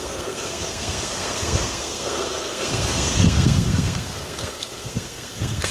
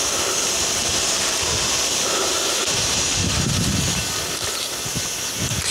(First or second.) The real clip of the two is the second